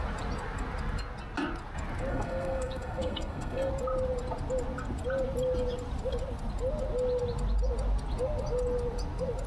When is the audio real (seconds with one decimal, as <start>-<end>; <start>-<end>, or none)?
0.0-2.1; 3.7-9.5